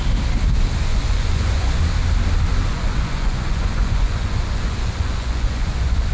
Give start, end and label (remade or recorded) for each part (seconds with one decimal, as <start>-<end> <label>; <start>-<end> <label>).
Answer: 0.0-0.9 recorded; 0.9-1.8 remade; 1.8-2.7 recorded; 2.7-6.1 remade